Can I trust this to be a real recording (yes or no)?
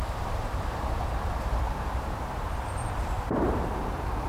no